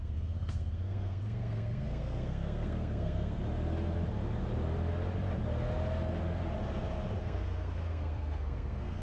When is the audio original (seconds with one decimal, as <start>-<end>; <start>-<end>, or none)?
3.4-7.2